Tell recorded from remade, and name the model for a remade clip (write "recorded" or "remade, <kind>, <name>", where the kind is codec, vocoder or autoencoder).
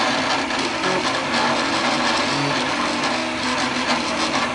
recorded